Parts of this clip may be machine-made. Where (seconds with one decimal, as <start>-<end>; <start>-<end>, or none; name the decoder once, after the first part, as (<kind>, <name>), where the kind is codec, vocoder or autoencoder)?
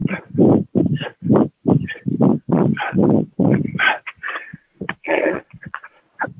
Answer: 2.3-3.6 (vocoder, Vocos); 4.5-6.0